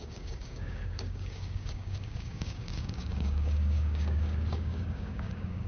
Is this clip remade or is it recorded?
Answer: remade